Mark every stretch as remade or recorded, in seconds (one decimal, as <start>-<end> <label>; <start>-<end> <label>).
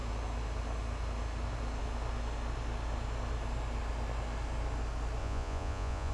0.0-5.2 recorded; 5.2-6.1 remade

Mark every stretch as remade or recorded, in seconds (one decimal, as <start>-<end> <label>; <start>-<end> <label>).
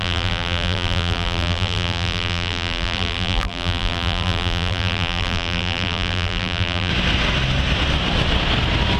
0.0-6.9 remade; 6.9-9.0 recorded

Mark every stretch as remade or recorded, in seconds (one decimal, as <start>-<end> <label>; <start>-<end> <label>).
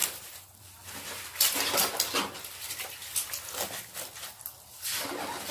0.0-0.6 remade; 0.6-5.5 recorded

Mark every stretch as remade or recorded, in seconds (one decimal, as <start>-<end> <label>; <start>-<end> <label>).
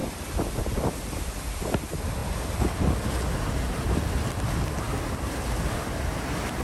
0.0-6.6 recorded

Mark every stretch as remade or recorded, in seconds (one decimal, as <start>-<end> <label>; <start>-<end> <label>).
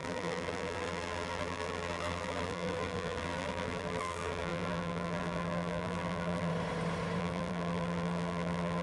0.0-6.5 remade; 6.5-7.2 recorded; 7.2-8.8 remade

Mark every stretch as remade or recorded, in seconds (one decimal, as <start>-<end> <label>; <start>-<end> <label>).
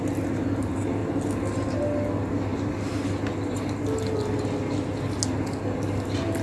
0.0-6.4 recorded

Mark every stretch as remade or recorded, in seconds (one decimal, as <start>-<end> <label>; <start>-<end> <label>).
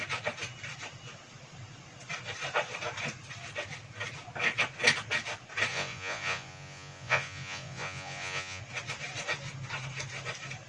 0.0-5.7 recorded; 5.7-8.6 remade; 8.6-10.7 recorded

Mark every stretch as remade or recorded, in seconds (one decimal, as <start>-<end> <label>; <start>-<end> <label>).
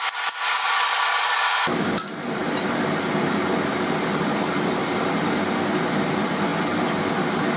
0.0-4.8 recorded; 4.8-5.4 remade; 5.4-7.6 recorded